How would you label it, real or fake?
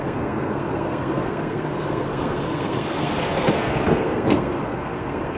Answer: fake